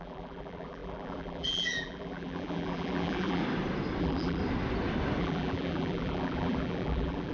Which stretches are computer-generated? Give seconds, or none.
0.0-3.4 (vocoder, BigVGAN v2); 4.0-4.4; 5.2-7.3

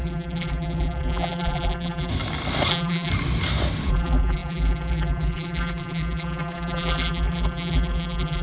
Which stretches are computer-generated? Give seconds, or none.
0.0-2.1 (vocoder, BigVGAN v2); 2.7-3.1; 3.9-8.4

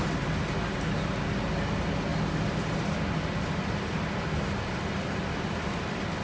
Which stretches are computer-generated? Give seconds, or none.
none

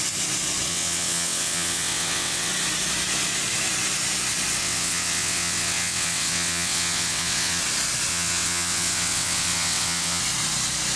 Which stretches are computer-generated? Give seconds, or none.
0.7-2.5 (vocoder, WaveNeXt); 4.6-7.6; 8.1-10.2